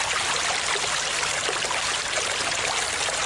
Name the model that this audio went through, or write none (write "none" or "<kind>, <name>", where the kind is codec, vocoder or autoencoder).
none